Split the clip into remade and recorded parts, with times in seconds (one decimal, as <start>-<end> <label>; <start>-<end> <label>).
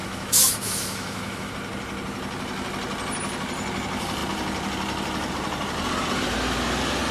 0.0-1.5 remade; 1.5-7.1 recorded